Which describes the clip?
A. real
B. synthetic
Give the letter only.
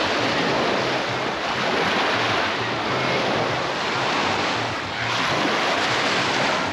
A